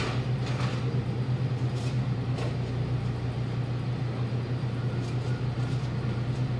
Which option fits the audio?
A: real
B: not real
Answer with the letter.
A